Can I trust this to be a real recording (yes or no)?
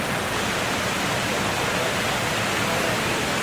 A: yes